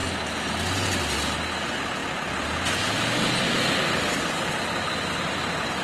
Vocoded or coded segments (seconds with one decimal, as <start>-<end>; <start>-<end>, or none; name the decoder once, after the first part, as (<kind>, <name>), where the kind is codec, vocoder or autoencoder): none